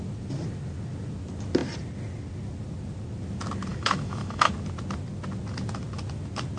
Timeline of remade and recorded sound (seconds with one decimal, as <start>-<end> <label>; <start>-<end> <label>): 0.0-3.7 recorded; 3.7-4.5 remade; 4.5-6.6 recorded